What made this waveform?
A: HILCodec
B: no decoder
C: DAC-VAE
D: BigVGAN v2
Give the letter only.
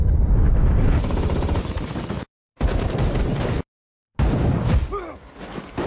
D